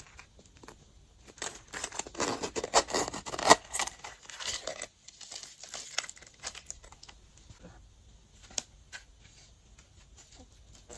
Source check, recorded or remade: recorded